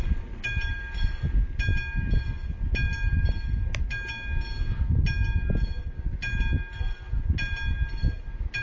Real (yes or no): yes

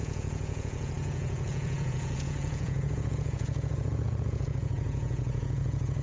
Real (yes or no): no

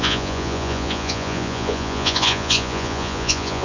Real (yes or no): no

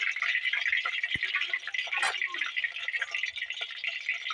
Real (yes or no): yes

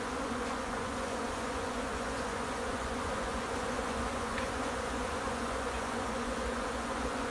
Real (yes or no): no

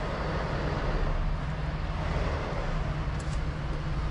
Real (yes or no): yes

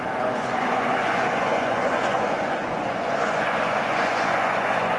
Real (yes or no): no